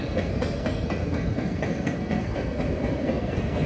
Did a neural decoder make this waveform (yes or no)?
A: yes